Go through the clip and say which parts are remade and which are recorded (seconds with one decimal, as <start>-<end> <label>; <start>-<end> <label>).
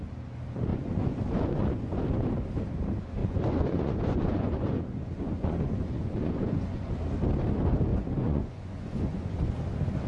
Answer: 0.0-0.7 recorded; 0.7-2.0 remade; 2.0-3.2 recorded; 3.2-6.9 remade; 6.9-7.9 recorded; 7.9-9.5 remade; 9.5-10.1 recorded